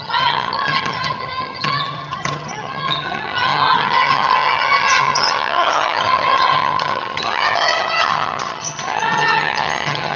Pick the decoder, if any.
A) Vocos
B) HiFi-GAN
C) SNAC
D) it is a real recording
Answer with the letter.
B